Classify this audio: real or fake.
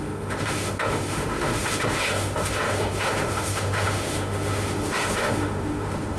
fake